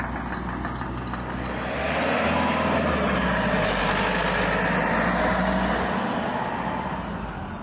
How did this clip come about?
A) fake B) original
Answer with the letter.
B